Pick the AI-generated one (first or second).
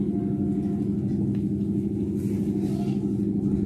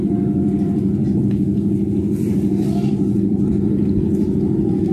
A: second